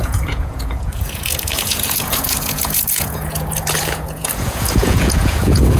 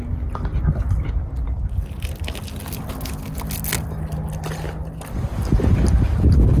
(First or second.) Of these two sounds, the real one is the second